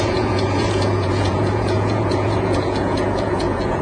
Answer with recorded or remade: remade